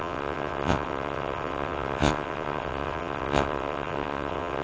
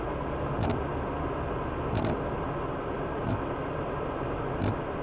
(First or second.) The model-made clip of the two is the first